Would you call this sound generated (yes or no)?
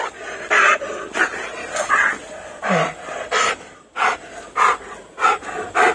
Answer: no